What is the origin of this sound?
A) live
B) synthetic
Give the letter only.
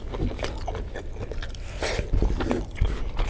A